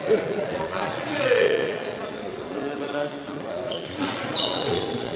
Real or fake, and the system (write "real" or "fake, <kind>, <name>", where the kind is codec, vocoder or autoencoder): fake, vocoder, Vocos